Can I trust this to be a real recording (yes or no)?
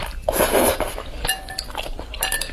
yes